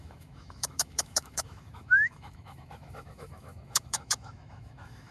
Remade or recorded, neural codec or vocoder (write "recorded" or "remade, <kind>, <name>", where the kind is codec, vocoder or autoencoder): remade, autoencoder, DAC-VAE